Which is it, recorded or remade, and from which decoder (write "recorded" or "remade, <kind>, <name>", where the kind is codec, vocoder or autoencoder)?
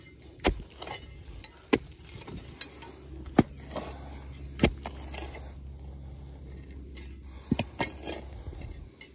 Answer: recorded